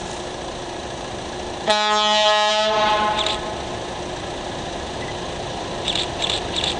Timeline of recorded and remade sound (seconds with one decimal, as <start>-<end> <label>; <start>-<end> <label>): 0.0-6.8 recorded